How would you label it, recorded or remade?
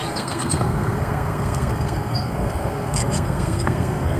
remade